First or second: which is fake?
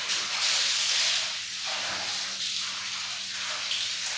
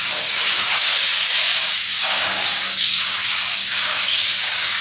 second